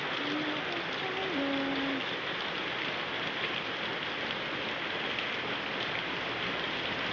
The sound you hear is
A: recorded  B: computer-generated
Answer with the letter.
A